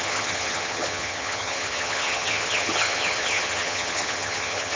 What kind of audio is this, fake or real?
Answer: fake